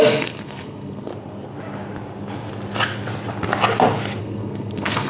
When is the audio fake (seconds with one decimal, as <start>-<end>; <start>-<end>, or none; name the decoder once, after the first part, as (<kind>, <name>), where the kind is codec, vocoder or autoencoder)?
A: 0.0-1.1 (codec, SNAC); 4.2-5.1